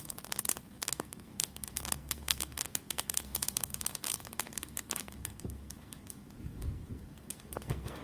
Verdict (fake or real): fake